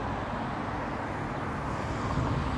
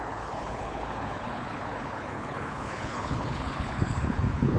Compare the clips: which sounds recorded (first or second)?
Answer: first